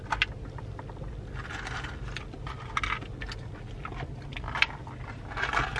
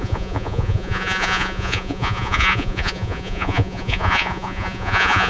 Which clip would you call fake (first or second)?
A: second